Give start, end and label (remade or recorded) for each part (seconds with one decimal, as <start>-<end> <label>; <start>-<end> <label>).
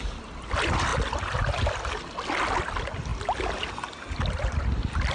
0.0-5.1 recorded